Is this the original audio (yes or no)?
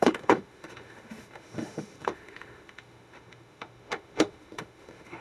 no